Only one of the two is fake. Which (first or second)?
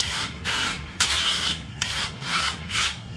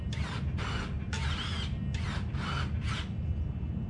first